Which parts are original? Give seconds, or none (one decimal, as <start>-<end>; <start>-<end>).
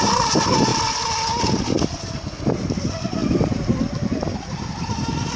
0.0-5.4